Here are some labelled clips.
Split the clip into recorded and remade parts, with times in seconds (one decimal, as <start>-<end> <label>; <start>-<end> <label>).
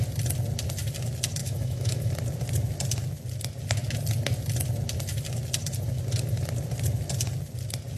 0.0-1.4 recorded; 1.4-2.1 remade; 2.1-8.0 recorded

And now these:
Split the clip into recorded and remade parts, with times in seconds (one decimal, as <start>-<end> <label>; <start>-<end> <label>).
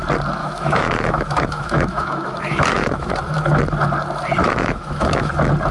0.0-0.4 recorded; 0.4-3.1 remade; 3.1-4.4 recorded; 4.4-5.3 remade; 5.3-5.7 recorded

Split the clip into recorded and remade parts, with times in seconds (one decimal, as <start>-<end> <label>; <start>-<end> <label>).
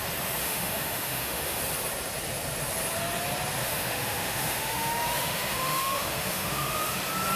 0.0-0.4 recorded; 0.4-1.6 remade; 1.6-3.6 recorded; 3.6-7.0 remade; 7.0-7.4 recorded